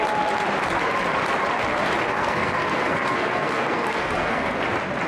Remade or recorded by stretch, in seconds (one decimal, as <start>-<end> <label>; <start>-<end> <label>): 0.0-2.1 recorded; 2.1-4.6 remade; 4.6-5.1 recorded